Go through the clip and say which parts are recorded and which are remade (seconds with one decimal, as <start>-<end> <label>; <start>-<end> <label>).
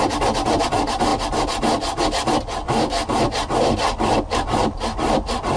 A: 0.0-5.6 recorded